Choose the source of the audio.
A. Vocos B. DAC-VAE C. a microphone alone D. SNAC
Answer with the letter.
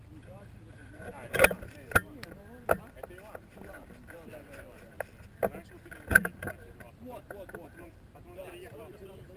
C